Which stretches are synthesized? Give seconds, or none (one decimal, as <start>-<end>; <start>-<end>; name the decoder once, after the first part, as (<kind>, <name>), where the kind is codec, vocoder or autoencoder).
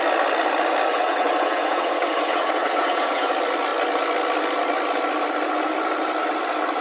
0.9-3.3 (vocoder, WaveNeXt)